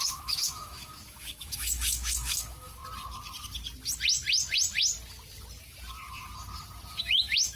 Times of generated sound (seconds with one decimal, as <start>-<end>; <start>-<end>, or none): 0.0-2.8; 7.0-7.6